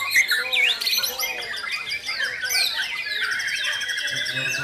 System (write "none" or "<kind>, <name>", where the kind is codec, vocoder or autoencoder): none